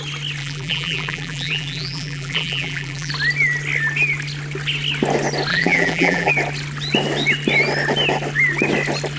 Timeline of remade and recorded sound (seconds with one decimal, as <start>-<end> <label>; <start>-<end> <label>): 0.0-0.4 recorded; 0.4-3.1 remade; 3.1-5.5 recorded; 5.5-6.3 remade; 6.3-9.2 recorded